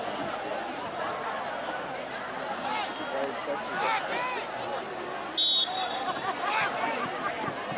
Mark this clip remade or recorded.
recorded